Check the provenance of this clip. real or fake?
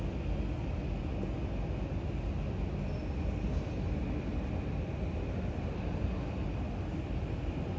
real